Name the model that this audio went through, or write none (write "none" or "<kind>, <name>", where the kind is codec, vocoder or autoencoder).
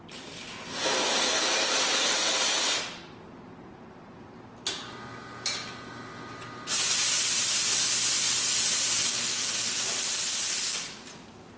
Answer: none